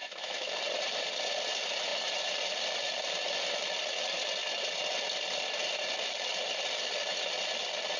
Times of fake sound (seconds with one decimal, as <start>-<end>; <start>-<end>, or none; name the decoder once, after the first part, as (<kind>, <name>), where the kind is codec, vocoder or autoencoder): 0.0-0.5 (autoencoder, DAC-VAE)